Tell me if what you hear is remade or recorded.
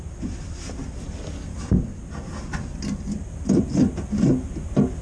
recorded